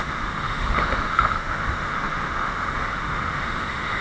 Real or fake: fake